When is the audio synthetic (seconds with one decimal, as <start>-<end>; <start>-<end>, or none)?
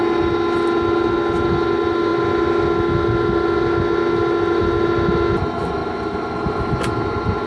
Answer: none